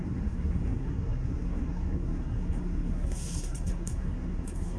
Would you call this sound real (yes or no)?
no